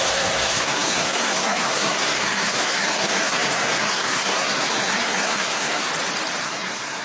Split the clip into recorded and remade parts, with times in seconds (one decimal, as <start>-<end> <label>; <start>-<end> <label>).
0.0-5.9 remade; 5.9-6.4 recorded; 6.4-7.0 remade